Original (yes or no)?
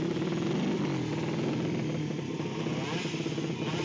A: yes